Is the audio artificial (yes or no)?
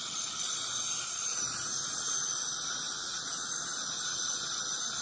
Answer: yes